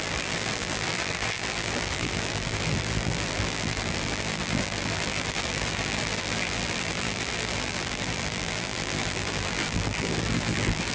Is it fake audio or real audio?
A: fake